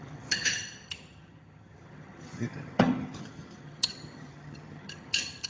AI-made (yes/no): yes